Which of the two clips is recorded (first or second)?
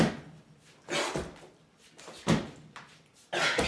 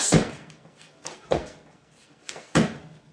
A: first